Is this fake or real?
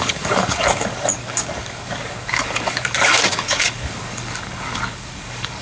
fake